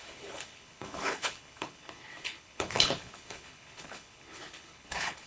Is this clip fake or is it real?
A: fake